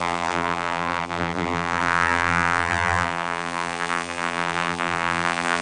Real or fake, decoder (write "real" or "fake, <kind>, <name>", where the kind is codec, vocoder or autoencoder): fake, vocoder, BigVGAN v2